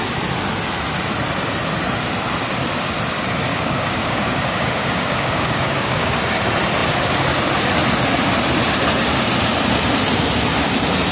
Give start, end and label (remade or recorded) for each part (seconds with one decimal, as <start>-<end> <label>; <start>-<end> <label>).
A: 0.0-3.5 recorded; 3.5-6.2 remade; 6.2-11.1 recorded